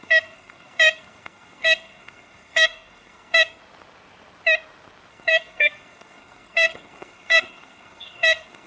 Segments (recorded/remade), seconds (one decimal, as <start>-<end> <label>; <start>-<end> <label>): 0.0-3.6 remade; 3.6-5.1 recorded; 5.1-8.7 remade